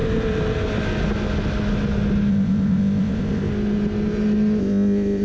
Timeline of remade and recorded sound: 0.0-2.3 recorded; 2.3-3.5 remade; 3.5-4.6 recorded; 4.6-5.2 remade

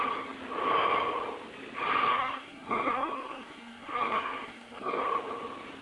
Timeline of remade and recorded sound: 0.0-2.1 recorded; 2.1-5.0 remade; 5.0-5.8 recorded

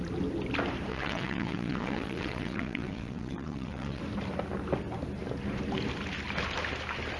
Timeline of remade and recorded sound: 0.0-0.9 recorded; 0.9-4.0 remade; 4.0-7.2 recorded

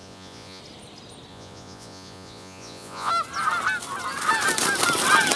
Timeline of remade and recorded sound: 0.0-0.6 remade; 0.6-1.3 recorded; 1.3-3.1 remade; 3.1-5.4 recorded

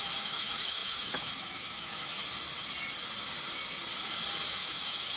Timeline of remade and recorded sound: 0.0-2.2 remade; 2.2-4.5 recorded; 4.5-5.2 remade